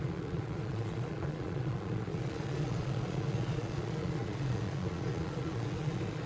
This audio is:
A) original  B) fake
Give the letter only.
B